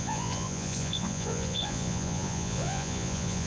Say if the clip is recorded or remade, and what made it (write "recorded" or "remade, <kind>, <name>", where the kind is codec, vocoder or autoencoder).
remade, vocoder, Vocos